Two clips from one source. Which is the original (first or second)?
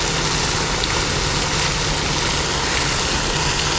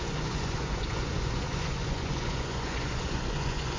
first